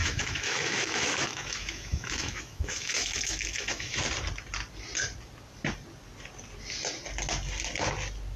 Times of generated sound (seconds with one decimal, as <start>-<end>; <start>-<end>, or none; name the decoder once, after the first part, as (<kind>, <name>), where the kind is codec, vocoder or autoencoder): 0.0-4.0 (autoencoder, DAC-VAE)